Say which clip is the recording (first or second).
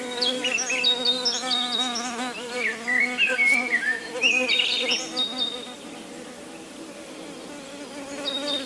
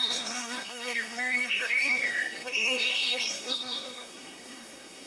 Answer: first